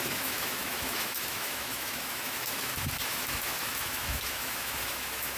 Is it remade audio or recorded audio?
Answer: remade